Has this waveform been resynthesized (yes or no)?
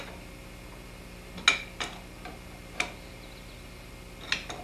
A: no